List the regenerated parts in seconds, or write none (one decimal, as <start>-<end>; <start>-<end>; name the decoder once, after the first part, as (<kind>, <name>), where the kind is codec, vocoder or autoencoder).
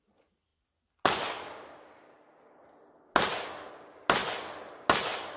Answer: none